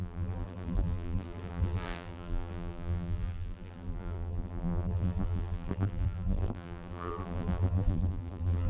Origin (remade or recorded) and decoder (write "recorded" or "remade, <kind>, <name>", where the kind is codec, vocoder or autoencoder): remade, vocoder, BigVGAN v2